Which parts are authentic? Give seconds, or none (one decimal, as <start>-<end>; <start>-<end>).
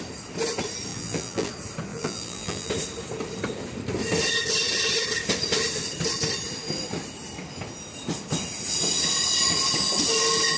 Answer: 0.0-0.9; 1.5-1.9; 2.7-10.6